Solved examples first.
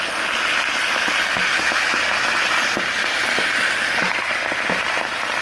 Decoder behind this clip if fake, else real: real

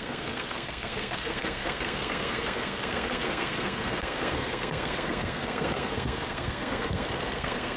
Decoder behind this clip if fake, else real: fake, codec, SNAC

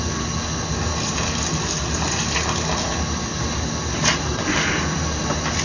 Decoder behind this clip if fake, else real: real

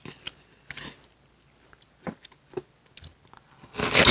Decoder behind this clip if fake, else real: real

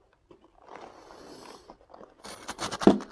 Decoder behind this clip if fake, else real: real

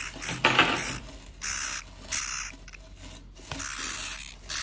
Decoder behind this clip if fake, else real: real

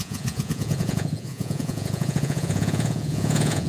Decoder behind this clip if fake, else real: fake, vocoder, Vocos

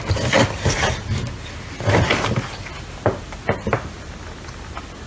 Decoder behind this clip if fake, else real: real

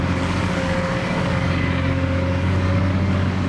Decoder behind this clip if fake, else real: fake, codec, DAC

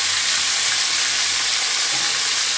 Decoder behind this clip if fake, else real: real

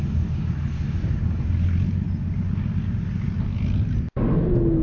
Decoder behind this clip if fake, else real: real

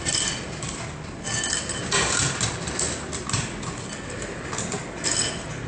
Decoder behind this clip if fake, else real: real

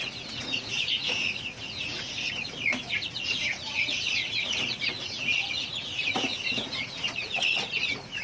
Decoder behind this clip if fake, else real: fake, vocoder, Vocos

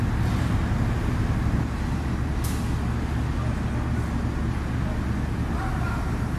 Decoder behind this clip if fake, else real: real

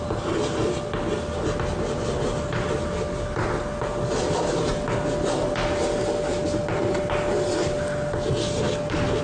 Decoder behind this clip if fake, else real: real